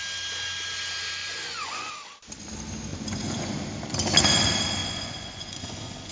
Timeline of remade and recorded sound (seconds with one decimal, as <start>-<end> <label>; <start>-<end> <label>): 0.0-1.2 recorded; 1.2-1.9 remade; 1.9-2.9 recorded; 2.9-3.5 remade; 3.5-4.8 recorded; 4.8-6.1 remade